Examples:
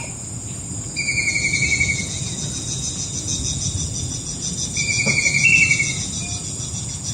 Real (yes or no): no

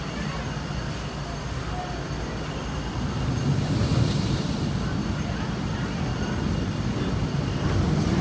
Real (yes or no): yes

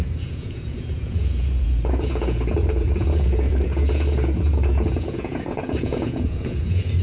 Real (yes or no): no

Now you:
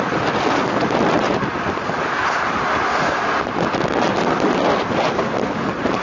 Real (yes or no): yes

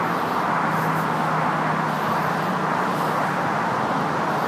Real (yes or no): yes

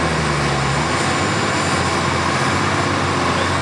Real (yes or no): yes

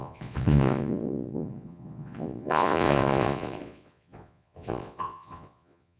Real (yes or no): no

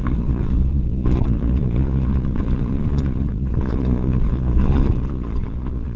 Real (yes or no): no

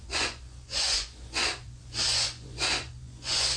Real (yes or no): no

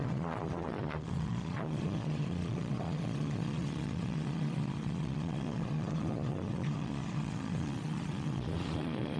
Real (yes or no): no